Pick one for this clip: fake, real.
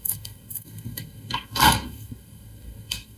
fake